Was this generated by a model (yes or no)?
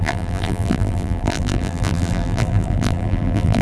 yes